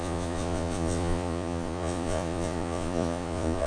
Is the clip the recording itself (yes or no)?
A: no